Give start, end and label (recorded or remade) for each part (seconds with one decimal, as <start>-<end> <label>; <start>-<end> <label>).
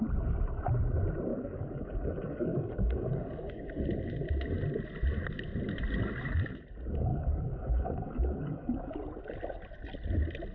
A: 0.0-1.3 recorded; 1.3-3.8 remade; 3.8-7.1 recorded; 7.1-8.9 remade; 8.9-10.5 recorded